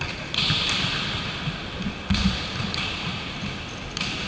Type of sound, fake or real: real